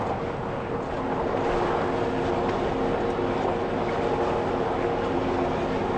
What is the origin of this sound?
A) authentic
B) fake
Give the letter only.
A